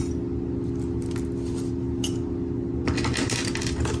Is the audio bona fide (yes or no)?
yes